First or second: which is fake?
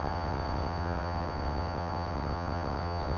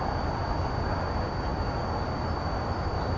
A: first